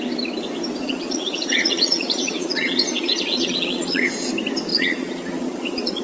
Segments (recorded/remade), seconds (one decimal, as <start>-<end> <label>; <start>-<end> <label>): 0.0-0.8 recorded; 0.8-4.3 remade; 4.3-4.7 recorded; 4.7-6.0 remade